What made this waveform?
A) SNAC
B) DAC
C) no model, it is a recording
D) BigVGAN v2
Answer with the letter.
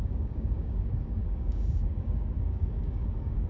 B